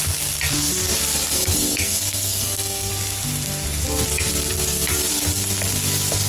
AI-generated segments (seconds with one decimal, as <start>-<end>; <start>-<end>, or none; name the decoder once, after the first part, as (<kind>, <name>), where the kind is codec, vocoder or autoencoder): 1.3-2.9 (codec, SNAC)